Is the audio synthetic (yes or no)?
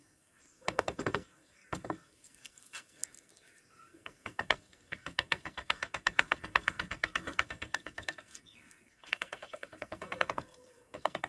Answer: yes